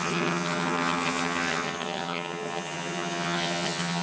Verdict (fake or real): fake